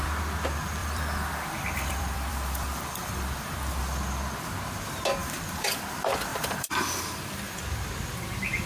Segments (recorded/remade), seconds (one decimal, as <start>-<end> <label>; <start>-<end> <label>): 0.0-0.8 recorded; 0.8-3.8 remade; 3.8-5.2 recorded; 5.2-5.8 remade; 5.8-6.3 recorded; 6.3-7.6 remade; 7.6-8.7 recorded